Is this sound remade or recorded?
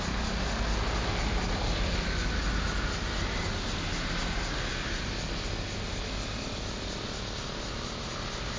recorded